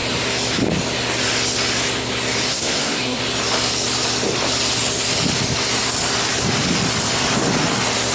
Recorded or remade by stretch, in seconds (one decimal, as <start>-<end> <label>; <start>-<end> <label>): 0.0-2.5 recorded; 2.5-3.2 remade; 3.2-8.1 recorded